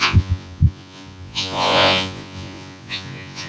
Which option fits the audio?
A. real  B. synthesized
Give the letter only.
B